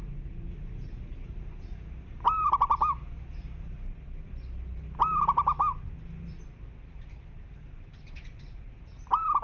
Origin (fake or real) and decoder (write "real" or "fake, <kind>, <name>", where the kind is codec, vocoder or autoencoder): real